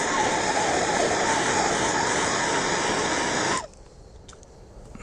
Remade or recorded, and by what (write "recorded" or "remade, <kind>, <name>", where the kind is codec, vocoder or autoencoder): recorded